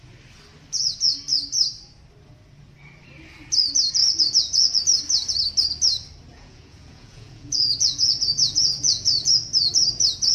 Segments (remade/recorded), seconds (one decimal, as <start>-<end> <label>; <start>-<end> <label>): 0.0-4.0 recorded; 4.0-4.8 remade; 4.8-6.3 recorded; 6.3-9.1 remade; 9.1-10.3 recorded